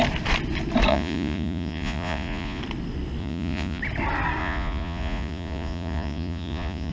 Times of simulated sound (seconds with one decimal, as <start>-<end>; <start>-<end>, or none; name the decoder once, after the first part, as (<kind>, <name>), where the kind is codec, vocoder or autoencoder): 0.9-2.6 (vocoder, Vocos); 3.2-3.8; 4.4-6.9